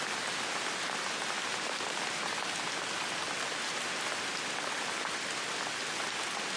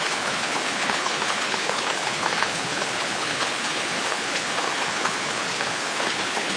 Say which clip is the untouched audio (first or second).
first